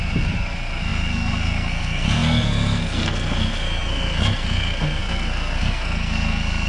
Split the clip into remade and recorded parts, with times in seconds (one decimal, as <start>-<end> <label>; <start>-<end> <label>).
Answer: 0.0-6.7 remade